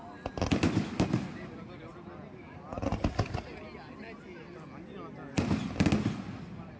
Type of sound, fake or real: real